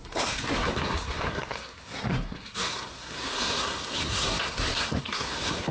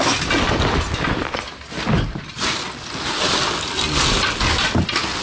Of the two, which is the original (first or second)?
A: second